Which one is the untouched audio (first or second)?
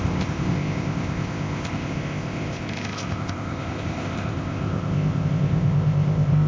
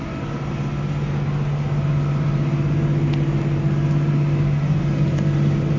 second